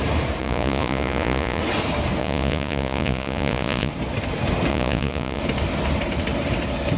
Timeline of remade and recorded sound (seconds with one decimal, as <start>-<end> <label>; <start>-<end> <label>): 0.0-0.4 recorded; 0.4-1.6 remade; 1.6-2.2 recorded; 2.2-3.9 remade; 3.9-4.7 recorded; 4.7-5.4 remade; 5.4-7.0 recorded